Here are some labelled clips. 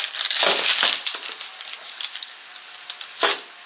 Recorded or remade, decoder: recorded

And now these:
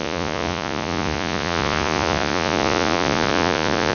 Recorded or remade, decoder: remade, vocoder, Vocos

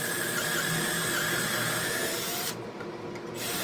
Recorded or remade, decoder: remade, vocoder, BigVGAN v2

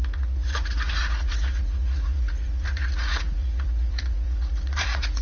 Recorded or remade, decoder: remade, vocoder, Vocos